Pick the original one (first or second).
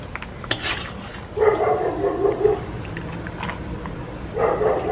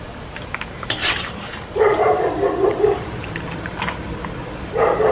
first